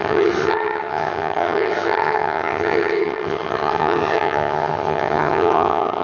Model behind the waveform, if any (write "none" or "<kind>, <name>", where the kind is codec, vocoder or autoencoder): vocoder, HiFi-GAN